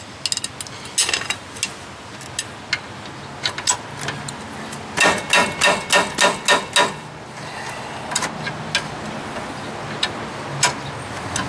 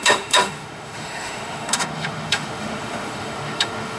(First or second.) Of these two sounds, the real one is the first